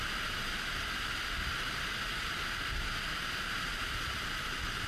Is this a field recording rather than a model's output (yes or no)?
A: yes